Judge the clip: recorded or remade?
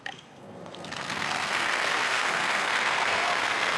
remade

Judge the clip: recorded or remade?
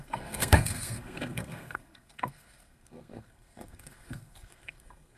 remade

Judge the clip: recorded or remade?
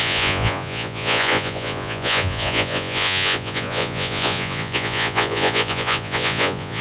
remade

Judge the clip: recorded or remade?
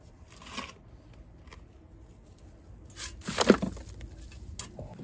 recorded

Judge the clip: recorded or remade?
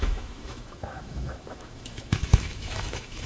remade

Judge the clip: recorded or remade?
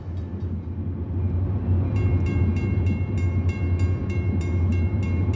recorded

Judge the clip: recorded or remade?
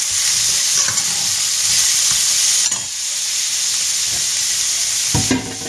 recorded